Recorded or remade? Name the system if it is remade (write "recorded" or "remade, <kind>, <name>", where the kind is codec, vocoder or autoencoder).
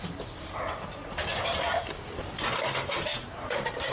remade, vocoder, BigVGAN v2